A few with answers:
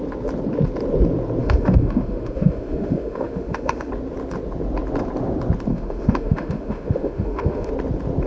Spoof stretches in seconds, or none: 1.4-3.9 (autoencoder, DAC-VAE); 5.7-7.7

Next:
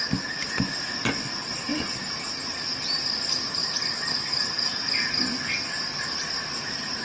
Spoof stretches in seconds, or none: none

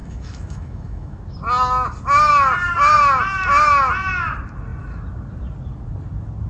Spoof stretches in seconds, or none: 0.0-1.2 (autoencoder, DAC-VAE)

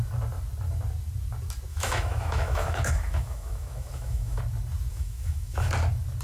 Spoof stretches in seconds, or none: 1.7-4.4 (autoencoder, DAC-VAE); 4.9-5.7

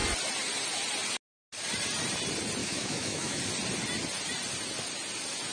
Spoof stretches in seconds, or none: 2.6-3.4 (autoencoder, DAC-VAE)

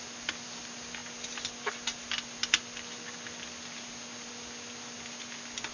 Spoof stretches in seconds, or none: none

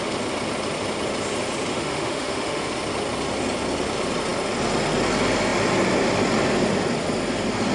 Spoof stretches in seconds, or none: 1.7-2.7 (autoencoder, DAC-VAE)

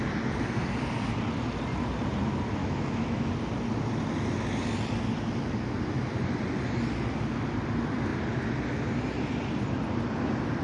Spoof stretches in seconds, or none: 2.6-3.3 (autoencoder, DAC-VAE)